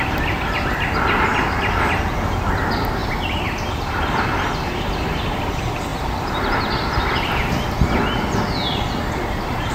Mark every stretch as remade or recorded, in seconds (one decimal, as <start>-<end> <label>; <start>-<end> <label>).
0.0-9.7 recorded

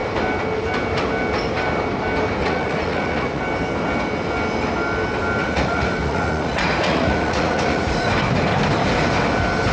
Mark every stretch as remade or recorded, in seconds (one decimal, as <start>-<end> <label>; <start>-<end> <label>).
0.0-2.4 recorded; 2.4-3.4 remade; 3.4-5.4 recorded; 5.4-8.1 remade; 8.1-9.7 recorded

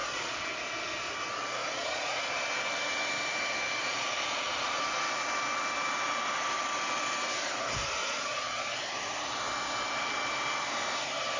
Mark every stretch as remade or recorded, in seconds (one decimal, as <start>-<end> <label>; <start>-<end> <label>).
0.0-0.5 remade; 0.5-1.6 recorded; 1.6-2.3 remade; 2.3-3.8 recorded; 3.8-4.8 remade; 4.8-8.0 recorded; 8.0-8.6 remade; 8.6-11.4 recorded

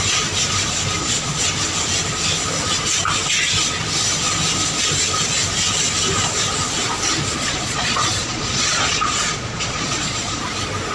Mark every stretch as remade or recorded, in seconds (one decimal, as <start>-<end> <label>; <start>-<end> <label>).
0.0-1.0 recorded; 1.0-1.5 remade; 1.5-7.4 recorded; 7.4-10.4 remade; 10.4-10.9 recorded

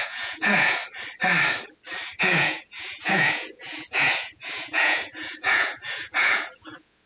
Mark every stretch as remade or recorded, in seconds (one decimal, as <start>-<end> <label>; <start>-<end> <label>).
0.0-0.8 remade; 0.8-2.2 recorded; 2.2-7.1 remade

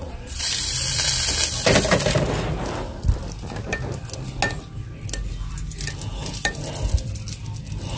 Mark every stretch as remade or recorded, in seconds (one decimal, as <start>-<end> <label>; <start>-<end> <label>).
0.0-0.5 remade; 0.5-8.0 recorded

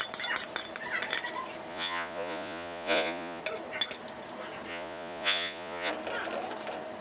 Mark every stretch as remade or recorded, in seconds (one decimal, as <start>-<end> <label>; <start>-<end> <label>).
0.0-1.7 recorded; 1.7-3.4 remade; 3.4-4.7 recorded; 4.7-5.9 remade; 5.9-7.0 recorded